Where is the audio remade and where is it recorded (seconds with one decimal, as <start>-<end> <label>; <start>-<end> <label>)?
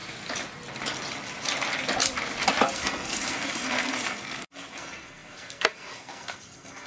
0.0-2.6 recorded; 2.6-6.9 remade